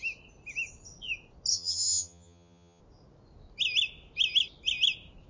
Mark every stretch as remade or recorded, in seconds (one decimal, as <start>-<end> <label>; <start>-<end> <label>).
0.0-1.5 recorded; 1.5-2.8 remade; 2.8-5.3 recorded